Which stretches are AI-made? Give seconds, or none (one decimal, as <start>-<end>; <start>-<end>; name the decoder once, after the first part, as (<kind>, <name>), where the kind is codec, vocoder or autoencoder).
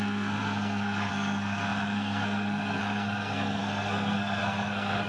0.0-5.1 (codec, SNAC)